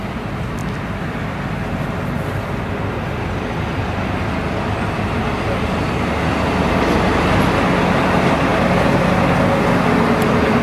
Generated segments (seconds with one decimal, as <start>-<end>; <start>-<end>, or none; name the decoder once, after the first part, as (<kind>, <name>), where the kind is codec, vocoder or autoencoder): 0.6-5.2 (vocoder, BigVGAN v2)